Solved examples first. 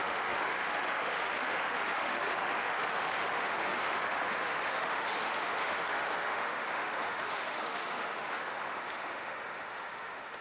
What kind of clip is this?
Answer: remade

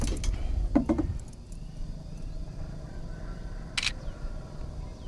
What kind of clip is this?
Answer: recorded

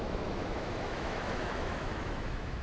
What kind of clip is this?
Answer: remade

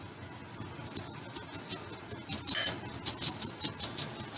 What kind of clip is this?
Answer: recorded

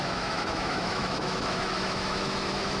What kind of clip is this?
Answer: remade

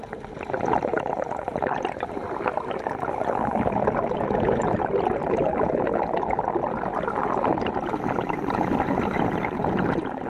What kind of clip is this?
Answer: recorded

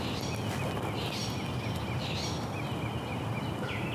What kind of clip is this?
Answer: recorded